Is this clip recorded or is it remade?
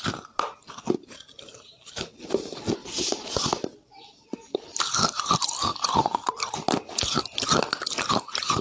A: recorded